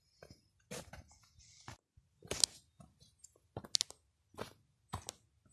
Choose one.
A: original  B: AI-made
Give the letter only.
A